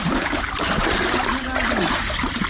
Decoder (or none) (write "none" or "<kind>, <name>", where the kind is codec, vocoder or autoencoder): none